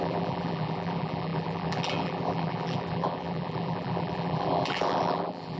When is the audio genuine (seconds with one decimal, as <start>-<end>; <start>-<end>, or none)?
none